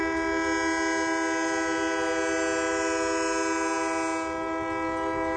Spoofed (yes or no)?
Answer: no